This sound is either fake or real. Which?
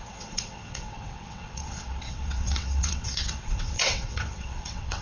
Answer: fake